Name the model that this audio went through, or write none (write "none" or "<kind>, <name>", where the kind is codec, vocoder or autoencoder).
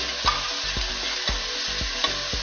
none